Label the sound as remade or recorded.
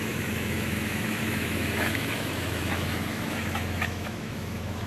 remade